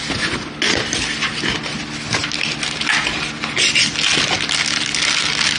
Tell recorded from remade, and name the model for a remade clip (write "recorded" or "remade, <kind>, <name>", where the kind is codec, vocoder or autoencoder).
recorded